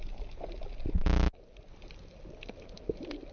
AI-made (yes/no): no